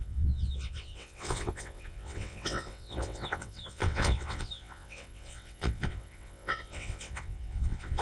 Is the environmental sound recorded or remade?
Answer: remade